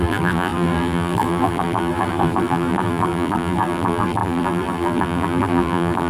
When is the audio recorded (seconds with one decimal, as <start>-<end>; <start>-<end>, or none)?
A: none